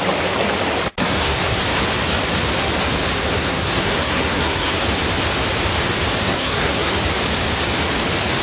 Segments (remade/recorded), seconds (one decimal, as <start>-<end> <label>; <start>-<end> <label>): 0.0-1.0 recorded; 1.0-1.6 remade; 1.6-3.2 recorded; 3.2-4.8 remade; 4.8-6.2 recorded; 6.2-6.9 remade; 6.9-8.4 recorded